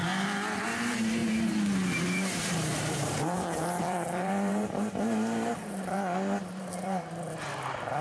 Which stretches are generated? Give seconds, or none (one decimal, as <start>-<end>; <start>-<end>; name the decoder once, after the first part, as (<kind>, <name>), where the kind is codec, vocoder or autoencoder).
0.6-8.0 (vocoder, BigVGAN v2)

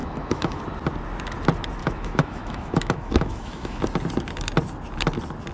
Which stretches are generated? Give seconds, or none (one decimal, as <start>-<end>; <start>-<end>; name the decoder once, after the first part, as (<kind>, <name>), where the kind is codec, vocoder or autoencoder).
0.0-0.6 (autoencoder, DAC-VAE); 1.8-3.8

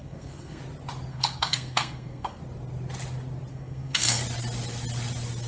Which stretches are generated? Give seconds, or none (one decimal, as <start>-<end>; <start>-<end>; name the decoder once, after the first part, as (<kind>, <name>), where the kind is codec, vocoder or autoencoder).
0.0-0.6 (codec, SNAC); 1.1-2.4; 3.5-4.2

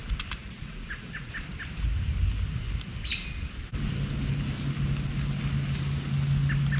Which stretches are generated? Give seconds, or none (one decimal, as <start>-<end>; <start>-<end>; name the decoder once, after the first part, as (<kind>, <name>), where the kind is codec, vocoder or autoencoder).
0.4-1.3 (vocoder, Vocos)

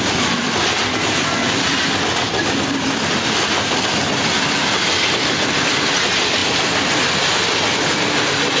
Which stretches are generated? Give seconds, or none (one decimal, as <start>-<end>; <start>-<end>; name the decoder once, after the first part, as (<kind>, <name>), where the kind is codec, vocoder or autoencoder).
none